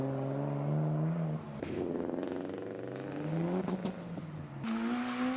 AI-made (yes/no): no